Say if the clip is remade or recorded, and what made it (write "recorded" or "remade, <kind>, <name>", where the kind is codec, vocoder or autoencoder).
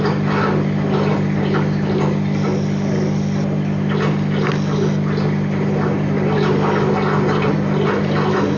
recorded